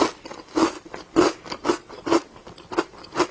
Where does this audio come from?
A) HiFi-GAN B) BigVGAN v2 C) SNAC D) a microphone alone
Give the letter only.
B